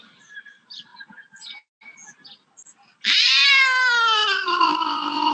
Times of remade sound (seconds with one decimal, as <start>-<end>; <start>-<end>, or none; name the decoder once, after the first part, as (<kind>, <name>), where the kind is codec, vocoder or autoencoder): 0.0-0.9 (vocoder, BigVGAN v2); 3.2-5.3